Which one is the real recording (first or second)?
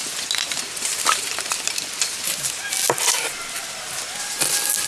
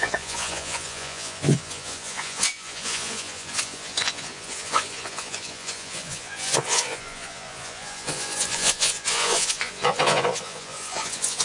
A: first